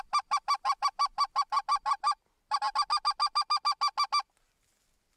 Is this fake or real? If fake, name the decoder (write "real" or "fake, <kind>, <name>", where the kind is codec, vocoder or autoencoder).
real